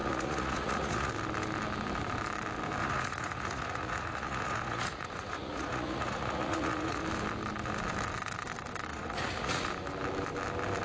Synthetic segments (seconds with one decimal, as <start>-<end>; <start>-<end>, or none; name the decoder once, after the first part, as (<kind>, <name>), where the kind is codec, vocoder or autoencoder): 0.0-1.1 (vocoder, Vocos); 2.8-7.0; 8.9-9.7